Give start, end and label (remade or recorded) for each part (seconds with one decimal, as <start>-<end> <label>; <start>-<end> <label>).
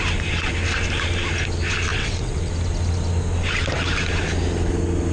0.0-1.9 recorded; 1.9-2.5 remade; 2.5-5.1 recorded